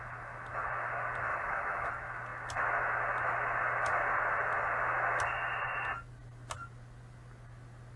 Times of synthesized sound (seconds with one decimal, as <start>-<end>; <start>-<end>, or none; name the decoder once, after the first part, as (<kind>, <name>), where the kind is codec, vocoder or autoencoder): 1.3-1.9 (autoencoder, DAC-VAE)